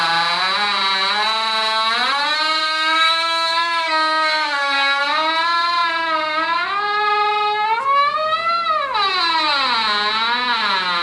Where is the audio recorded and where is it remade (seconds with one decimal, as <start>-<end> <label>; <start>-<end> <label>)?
0.0-2.6 recorded; 2.6-5.0 remade; 5.0-11.0 recorded